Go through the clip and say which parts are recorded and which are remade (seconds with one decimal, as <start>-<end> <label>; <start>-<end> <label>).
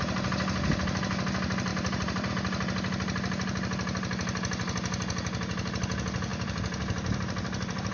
0.0-1.7 recorded; 1.7-2.3 remade; 2.3-6.3 recorded; 6.3-7.9 remade